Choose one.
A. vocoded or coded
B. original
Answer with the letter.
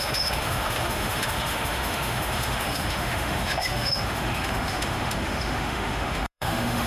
A